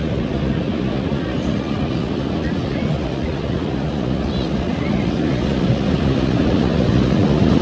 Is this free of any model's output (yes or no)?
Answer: no